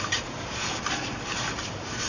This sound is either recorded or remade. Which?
recorded